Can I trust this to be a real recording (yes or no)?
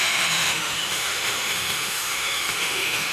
no